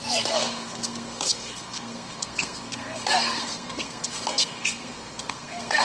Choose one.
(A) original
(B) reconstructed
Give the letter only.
B